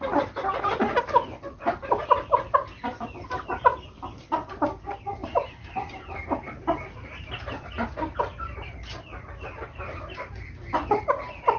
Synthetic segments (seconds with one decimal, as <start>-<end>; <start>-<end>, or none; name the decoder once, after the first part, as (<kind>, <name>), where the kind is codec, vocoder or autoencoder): none